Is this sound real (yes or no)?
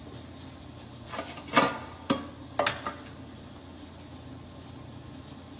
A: yes